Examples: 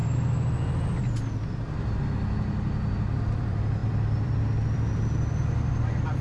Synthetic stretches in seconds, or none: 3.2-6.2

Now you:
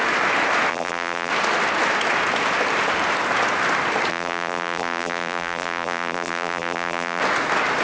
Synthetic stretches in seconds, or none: 0.7-1.3; 4.1-7.2

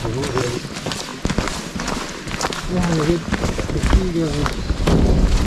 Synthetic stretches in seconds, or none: 4.4-5.0